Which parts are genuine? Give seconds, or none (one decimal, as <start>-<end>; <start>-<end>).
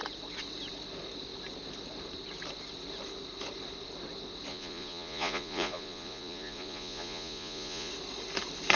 0.0-4.5; 7.9-8.8